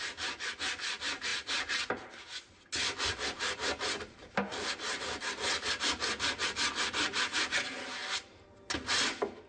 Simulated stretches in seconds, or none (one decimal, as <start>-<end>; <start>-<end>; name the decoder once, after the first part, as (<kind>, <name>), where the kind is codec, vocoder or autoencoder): 0.0-1.3 (vocoder, BigVGAN v2); 3.1-8.0